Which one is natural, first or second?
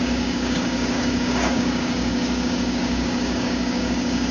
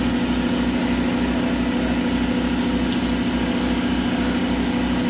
second